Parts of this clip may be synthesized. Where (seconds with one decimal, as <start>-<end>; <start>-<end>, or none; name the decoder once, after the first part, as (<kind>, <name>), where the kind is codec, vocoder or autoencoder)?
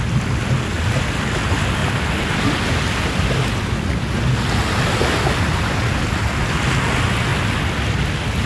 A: none